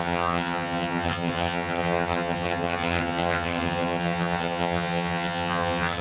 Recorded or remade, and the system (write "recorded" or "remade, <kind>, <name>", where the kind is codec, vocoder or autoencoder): remade, vocoder, HiFi-GAN